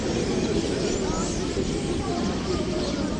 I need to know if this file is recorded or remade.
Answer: remade